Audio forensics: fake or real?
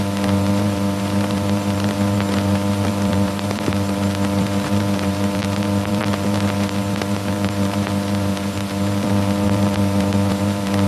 fake